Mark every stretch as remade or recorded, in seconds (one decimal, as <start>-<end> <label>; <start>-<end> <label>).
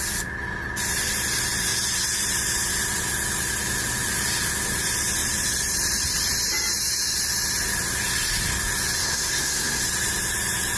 0.0-9.0 recorded; 9.0-9.8 remade; 9.8-10.8 recorded